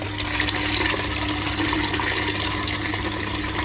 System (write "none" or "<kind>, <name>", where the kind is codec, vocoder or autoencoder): none